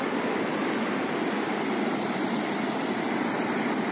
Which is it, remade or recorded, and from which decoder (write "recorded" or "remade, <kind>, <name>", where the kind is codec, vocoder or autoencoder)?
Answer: remade, vocoder, BigVGAN v2